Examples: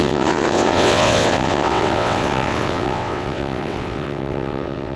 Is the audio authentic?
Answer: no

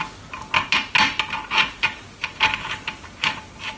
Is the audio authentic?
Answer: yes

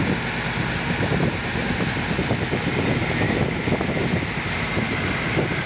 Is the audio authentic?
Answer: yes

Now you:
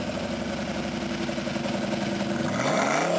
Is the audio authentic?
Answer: yes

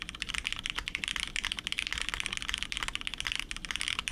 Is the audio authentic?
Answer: yes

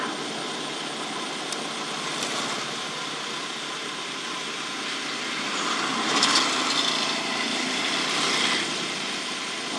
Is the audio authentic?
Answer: yes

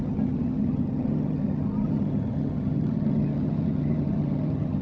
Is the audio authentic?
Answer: no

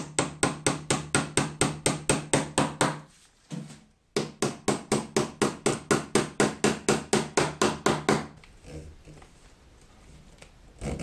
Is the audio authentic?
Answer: yes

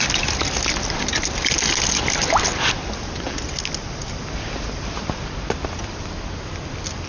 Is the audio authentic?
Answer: yes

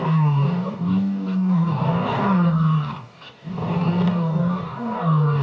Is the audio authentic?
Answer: no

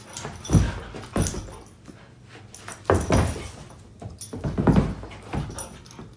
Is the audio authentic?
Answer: yes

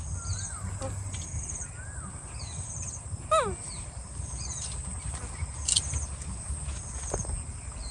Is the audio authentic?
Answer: yes